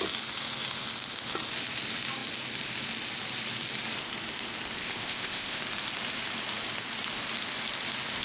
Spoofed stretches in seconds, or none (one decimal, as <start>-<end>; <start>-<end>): 4.8-5.6